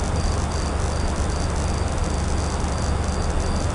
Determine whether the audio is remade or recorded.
recorded